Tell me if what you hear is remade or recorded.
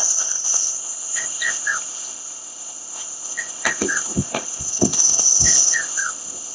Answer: remade